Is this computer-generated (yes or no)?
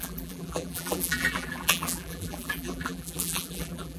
yes